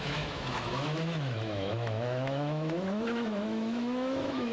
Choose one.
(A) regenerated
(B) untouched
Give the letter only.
A